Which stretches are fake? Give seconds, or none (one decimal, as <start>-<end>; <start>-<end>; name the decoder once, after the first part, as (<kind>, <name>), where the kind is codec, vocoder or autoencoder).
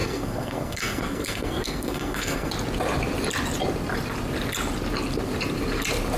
0.0-2.5 (codec, SNAC)